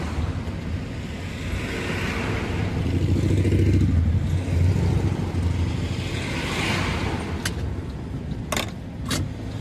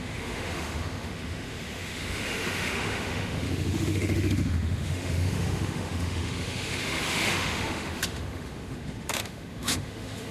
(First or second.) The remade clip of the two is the second